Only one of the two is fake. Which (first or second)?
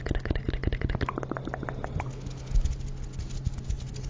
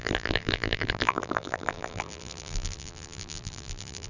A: second